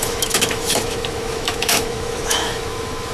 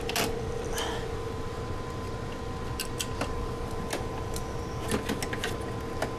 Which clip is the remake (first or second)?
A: first